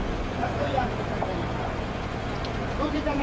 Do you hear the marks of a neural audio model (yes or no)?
yes